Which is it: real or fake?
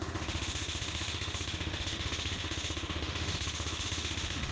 fake